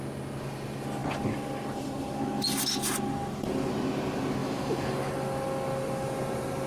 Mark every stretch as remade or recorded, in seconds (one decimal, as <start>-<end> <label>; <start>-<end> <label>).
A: 0.0-4.4 recorded; 4.4-5.1 remade; 5.1-6.7 recorded